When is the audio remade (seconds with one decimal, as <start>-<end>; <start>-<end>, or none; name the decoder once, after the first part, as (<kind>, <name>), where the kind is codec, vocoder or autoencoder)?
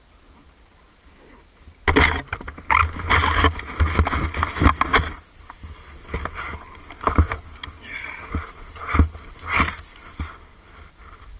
none